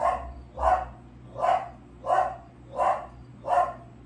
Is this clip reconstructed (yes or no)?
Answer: no